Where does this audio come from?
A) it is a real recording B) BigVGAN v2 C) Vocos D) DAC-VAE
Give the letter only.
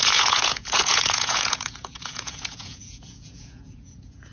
C